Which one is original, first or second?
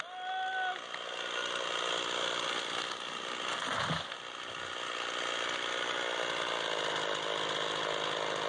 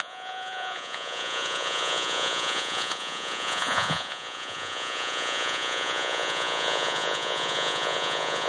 first